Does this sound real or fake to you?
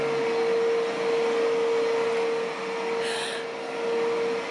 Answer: real